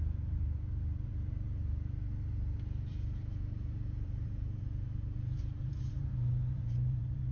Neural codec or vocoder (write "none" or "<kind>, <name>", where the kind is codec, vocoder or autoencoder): vocoder, BigVGAN v2